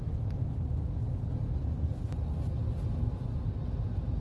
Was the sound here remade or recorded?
recorded